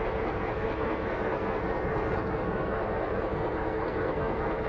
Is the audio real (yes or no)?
no